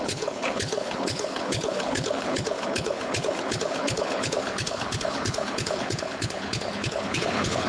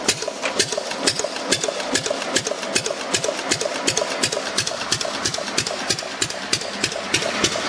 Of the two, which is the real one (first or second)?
second